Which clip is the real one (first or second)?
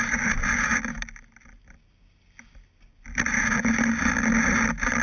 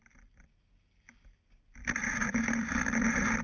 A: first